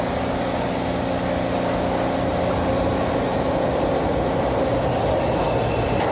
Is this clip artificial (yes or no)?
no